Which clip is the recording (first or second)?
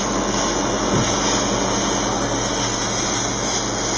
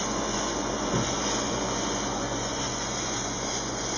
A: first